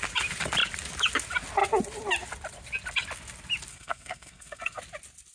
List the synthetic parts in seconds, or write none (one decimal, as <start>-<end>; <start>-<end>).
3.7-4.8